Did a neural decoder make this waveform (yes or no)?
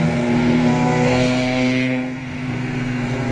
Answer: yes